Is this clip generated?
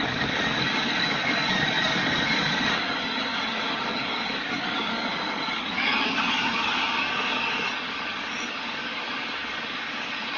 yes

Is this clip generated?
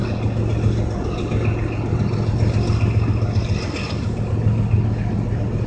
no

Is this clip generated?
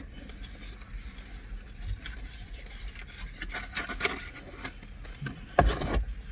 no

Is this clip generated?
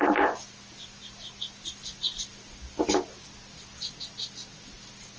no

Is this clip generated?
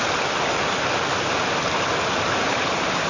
no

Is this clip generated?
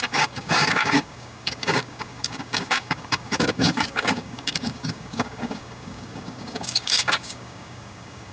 yes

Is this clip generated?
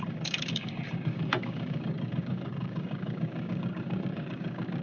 yes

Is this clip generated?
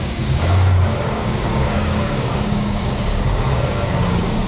yes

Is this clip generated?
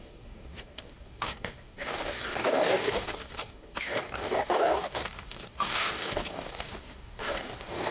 yes